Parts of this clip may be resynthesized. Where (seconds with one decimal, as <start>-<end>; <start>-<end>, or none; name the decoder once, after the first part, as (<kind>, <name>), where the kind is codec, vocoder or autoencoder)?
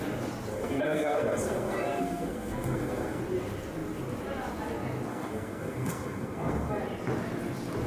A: 0.5-3.2 (codec, SNAC); 5.1-6.8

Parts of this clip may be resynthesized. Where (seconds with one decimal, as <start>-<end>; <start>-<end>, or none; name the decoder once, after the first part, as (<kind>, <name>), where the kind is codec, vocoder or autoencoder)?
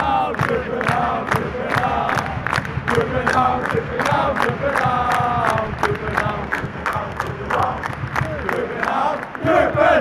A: 3.3-4.0 (codec, SNAC); 6.4-7.9